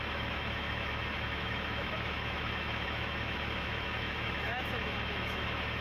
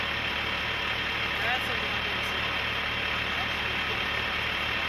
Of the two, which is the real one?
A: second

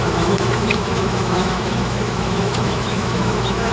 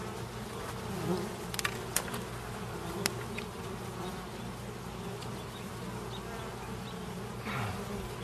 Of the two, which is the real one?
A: second